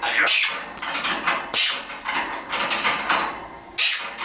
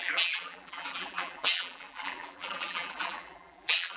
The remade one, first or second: second